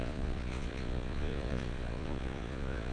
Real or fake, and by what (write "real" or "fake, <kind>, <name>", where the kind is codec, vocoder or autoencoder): fake, vocoder, Vocos